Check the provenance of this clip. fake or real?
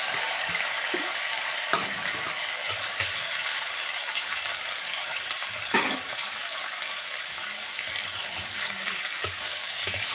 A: fake